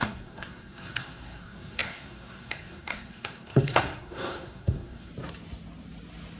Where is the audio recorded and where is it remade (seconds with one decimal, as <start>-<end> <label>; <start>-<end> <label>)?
0.0-5.1 remade; 5.1-6.4 recorded